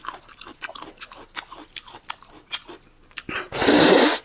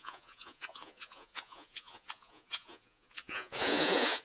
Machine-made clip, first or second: second